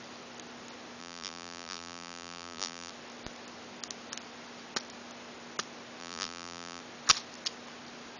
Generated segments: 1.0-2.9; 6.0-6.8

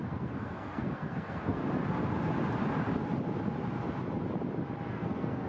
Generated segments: 0.0-1.6; 4.9-5.5